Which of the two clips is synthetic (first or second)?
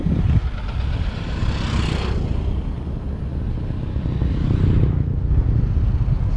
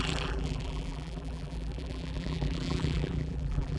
second